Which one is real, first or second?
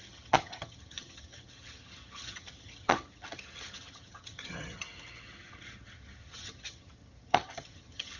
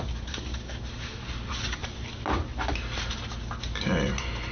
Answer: second